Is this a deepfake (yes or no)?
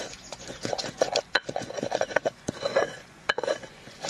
yes